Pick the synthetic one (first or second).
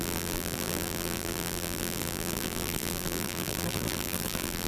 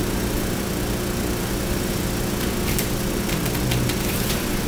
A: first